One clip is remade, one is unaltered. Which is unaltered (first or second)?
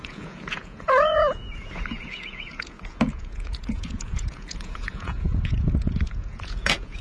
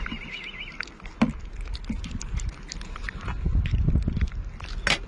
second